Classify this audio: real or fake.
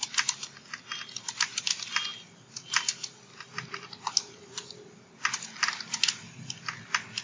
real